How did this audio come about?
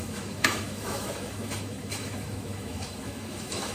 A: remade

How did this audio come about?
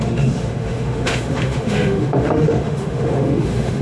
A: remade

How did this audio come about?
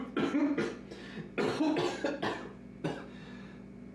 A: recorded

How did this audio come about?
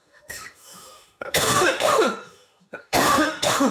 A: remade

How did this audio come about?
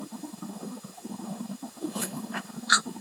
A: remade